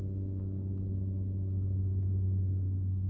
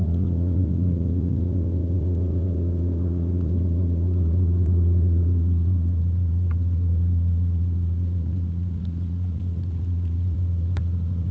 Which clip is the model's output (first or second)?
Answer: second